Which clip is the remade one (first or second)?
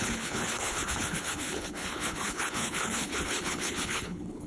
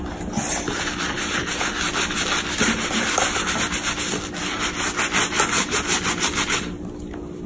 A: first